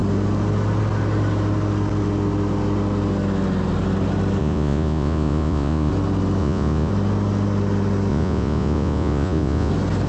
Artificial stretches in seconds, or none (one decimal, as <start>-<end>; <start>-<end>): 4.4-5.9; 6.4-6.9; 8.1-9.7